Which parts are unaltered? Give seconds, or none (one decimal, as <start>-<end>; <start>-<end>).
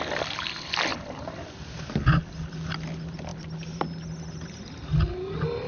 0.0-5.7